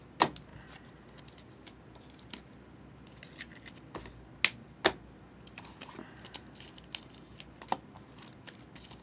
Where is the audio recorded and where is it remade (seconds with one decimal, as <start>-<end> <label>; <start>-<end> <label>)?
0.0-9.0 recorded